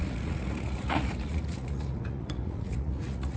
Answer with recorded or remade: remade